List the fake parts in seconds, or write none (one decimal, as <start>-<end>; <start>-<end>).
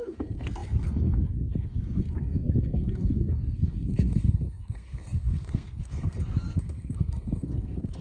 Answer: 0.0-8.0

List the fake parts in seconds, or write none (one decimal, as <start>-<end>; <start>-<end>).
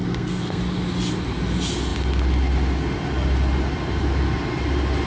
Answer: 0.0-0.6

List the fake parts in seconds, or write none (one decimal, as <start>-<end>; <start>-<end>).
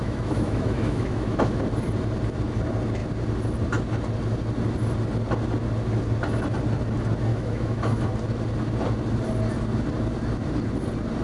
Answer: 0.0-1.6; 7.3-8.1